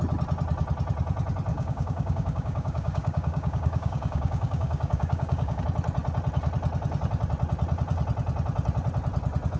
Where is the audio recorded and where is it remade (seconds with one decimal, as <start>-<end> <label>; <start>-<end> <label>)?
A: 0.0-1.5 recorded; 1.5-5.6 remade; 5.6-9.6 recorded